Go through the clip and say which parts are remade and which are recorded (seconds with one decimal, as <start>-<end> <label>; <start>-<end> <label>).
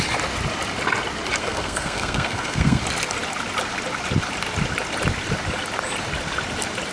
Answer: 0.0-1.4 recorded; 1.4-2.8 remade; 2.8-6.9 recorded